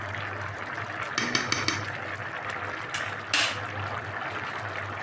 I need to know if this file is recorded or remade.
recorded